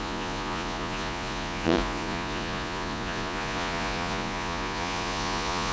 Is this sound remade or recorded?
remade